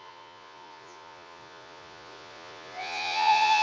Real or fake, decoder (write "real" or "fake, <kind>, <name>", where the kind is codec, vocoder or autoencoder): fake, vocoder, Vocos